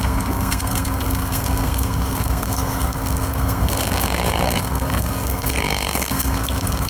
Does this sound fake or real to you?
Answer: fake